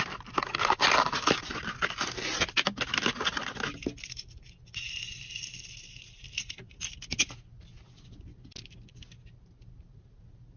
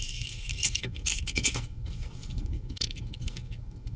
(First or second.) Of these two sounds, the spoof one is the second